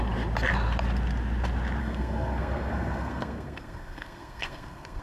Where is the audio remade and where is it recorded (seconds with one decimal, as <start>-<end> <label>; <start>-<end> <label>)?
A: 0.0-1.8 recorded; 1.8-5.0 remade

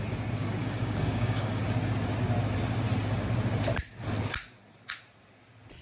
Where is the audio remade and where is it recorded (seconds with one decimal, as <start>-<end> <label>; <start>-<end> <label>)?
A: 0.0-0.6 recorded; 0.6-1.6 remade; 1.6-5.8 recorded

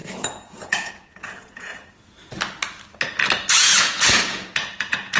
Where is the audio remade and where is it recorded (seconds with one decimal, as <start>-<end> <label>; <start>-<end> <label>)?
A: 0.0-1.7 remade; 1.7-3.5 recorded; 3.5-5.2 remade

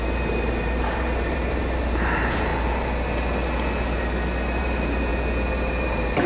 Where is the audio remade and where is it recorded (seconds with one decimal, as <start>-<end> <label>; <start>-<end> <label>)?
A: 0.0-2.5 remade; 2.5-4.6 recorded; 4.6-5.1 remade; 5.1-5.7 recorded; 5.7-6.3 remade